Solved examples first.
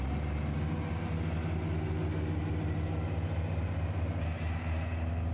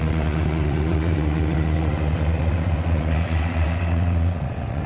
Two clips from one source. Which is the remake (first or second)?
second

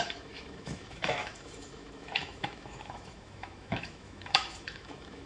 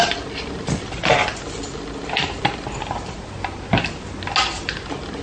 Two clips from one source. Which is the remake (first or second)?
first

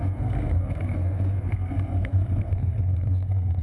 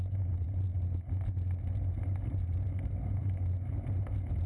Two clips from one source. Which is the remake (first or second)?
first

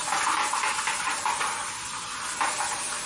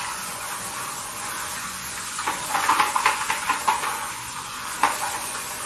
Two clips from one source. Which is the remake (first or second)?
second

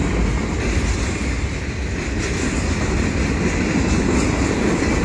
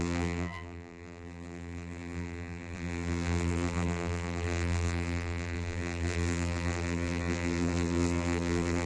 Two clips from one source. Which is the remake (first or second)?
second